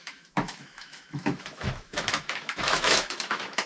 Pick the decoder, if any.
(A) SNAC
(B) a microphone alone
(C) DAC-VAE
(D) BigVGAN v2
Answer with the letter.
C